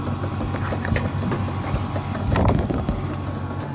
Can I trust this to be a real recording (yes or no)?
yes